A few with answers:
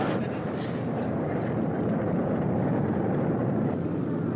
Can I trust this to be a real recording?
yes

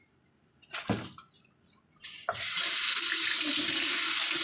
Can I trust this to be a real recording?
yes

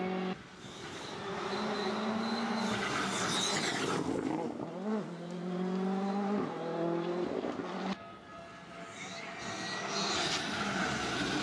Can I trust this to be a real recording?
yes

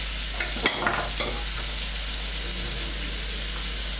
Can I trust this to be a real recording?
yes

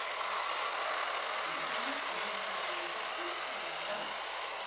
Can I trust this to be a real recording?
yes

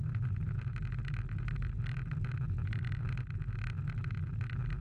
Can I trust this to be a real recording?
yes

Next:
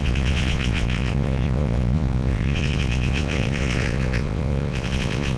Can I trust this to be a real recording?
no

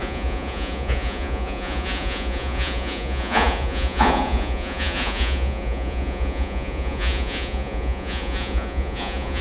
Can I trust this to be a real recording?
no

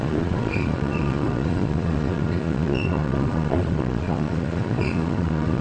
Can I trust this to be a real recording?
no